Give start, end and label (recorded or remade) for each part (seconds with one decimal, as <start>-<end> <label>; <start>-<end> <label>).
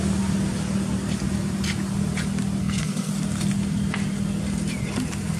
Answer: 0.0-2.6 recorded; 2.6-3.1 remade; 3.1-5.4 recorded